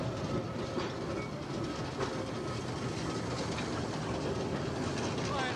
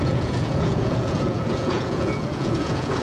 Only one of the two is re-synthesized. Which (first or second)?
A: second